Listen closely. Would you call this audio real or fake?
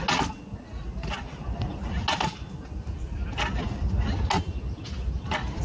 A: real